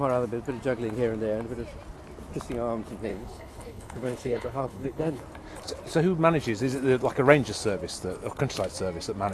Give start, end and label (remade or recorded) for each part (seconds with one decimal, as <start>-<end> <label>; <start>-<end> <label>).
0.0-3.1 recorded; 3.1-5.2 remade; 5.2-9.3 recorded